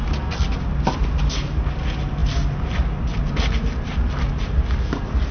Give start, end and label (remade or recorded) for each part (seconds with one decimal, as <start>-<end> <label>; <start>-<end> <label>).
0.0-5.3 recorded